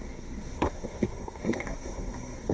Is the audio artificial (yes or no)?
yes